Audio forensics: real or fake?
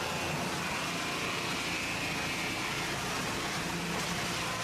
real